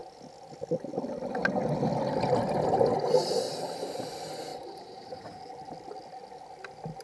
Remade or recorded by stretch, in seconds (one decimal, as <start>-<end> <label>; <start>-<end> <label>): 0.0-4.5 recorded; 4.5-5.4 remade; 5.4-7.0 recorded